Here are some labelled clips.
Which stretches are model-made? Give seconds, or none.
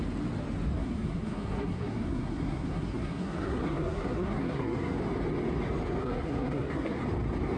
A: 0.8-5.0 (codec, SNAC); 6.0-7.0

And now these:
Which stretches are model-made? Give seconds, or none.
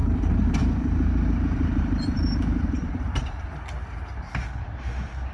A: 0.0-3.2 (vocoder, BigVGAN v2); 3.8-4.3